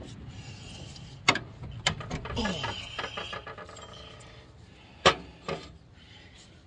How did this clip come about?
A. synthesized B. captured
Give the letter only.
B